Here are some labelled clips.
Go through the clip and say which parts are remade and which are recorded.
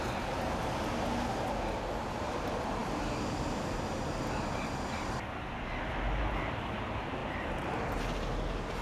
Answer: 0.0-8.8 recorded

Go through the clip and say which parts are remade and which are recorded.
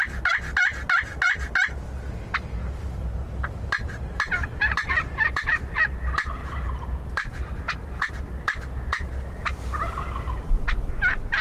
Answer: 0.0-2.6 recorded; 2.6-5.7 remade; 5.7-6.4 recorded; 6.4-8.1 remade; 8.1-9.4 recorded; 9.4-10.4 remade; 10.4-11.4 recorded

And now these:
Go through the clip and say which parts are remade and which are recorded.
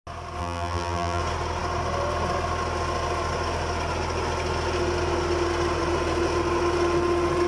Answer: 0.0-0.4 recorded; 0.4-1.2 remade; 1.2-7.5 recorded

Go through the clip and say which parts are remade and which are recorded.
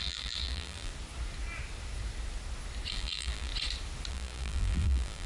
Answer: 0.0-0.9 remade; 0.9-2.9 recorded; 2.9-3.5 remade; 3.5-4.1 recorded; 4.1-5.3 remade